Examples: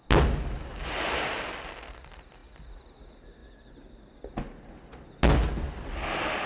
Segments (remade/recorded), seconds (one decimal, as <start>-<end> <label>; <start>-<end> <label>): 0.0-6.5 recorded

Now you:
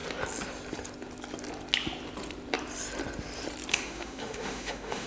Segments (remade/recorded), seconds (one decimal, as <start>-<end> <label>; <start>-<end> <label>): 0.0-3.7 recorded; 3.7-5.1 remade

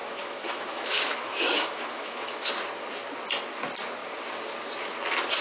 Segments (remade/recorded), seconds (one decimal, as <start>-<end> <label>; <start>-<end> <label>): 0.0-2.5 remade; 2.5-5.4 recorded

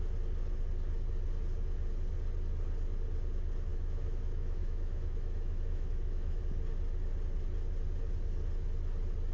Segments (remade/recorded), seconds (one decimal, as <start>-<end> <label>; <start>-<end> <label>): 0.0-3.7 recorded; 3.7-6.4 remade; 6.4-9.3 recorded